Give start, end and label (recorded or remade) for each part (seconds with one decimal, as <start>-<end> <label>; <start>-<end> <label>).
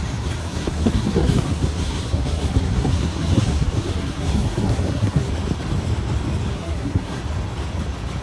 0.0-0.4 recorded; 0.4-5.3 remade; 5.3-6.5 recorded; 6.5-7.2 remade; 7.2-8.2 recorded